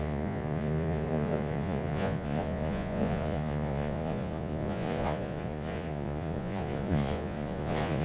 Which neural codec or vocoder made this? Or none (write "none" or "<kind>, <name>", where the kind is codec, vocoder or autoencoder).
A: vocoder, Vocos